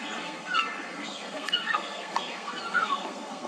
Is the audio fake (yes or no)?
yes